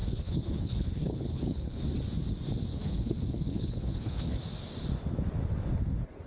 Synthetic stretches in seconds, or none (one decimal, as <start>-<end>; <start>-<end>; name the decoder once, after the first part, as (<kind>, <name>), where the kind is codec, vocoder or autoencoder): 0.0-1.8 (codec, HILCodec); 2.7-4.4